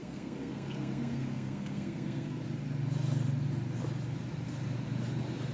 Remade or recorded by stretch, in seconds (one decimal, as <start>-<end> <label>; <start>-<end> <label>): 0.0-2.4 remade; 2.4-5.5 recorded